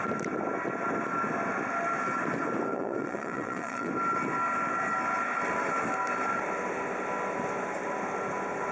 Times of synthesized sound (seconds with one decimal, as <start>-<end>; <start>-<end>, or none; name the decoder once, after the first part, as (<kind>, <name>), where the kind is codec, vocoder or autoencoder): 2.7-3.9 (vocoder, Vocos)